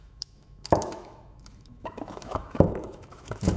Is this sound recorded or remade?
remade